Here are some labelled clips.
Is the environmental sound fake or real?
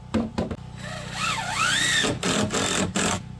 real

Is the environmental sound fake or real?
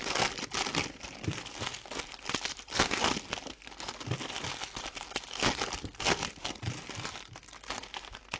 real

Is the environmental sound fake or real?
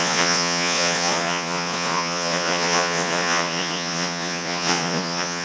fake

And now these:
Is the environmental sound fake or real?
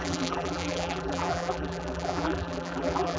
fake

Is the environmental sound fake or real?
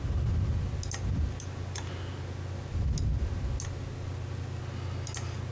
real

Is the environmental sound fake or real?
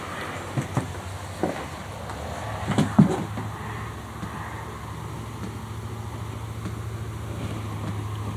real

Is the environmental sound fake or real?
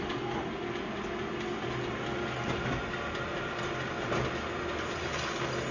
real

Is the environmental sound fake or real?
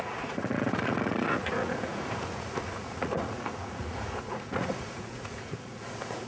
fake